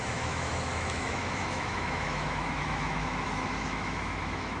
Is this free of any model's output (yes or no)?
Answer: no